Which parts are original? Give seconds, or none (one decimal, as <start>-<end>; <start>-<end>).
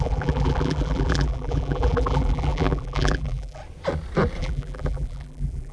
3.6-4.4